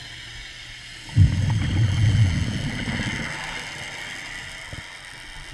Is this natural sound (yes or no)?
yes